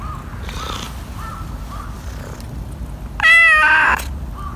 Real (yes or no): yes